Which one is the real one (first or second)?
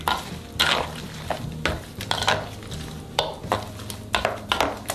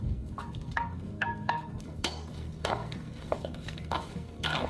first